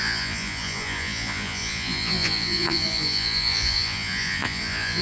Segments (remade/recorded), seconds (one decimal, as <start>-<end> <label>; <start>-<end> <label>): 0.0-5.0 remade